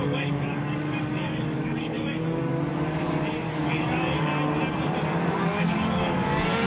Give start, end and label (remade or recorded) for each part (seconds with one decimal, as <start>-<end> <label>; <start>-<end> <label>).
0.0-2.5 remade; 2.5-3.7 recorded; 3.7-4.3 remade; 4.3-5.3 recorded; 5.3-6.7 remade